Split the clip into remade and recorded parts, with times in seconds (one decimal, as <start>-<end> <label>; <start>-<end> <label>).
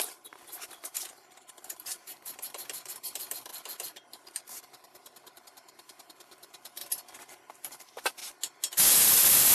0.0-3.5 remade; 3.5-4.6 recorded; 4.6-6.8 remade; 6.8-7.5 recorded; 7.5-8.2 remade; 8.2-9.1 recorded; 9.1-9.5 remade